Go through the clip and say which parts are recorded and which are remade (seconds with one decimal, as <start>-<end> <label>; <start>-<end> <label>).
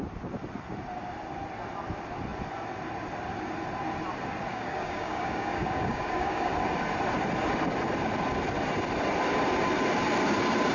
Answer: 0.0-4.5 recorded; 4.5-6.5 remade; 6.5-10.7 recorded